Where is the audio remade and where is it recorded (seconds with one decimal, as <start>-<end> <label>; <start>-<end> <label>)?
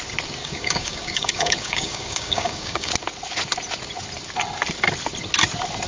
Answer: 0.0-0.4 recorded; 0.4-2.9 remade; 2.9-5.9 recorded